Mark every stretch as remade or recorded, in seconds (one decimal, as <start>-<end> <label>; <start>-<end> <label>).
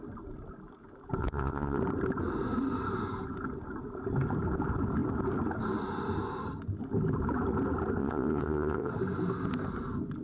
0.0-1.2 recorded; 1.2-1.8 remade; 1.8-8.0 recorded; 8.0-8.9 remade; 8.9-10.2 recorded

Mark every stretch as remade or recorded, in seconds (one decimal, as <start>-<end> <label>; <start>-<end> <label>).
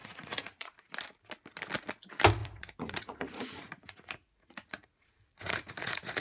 0.0-0.7 remade; 0.7-2.4 recorded; 2.4-6.2 remade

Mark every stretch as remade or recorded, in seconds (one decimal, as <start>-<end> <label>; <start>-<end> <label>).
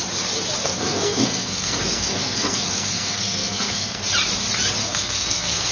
0.0-0.6 recorded; 0.6-4.0 remade; 4.0-4.8 recorded; 4.8-5.7 remade